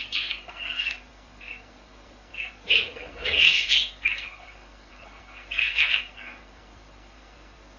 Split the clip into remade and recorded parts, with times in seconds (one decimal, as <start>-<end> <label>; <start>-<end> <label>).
0.0-7.8 remade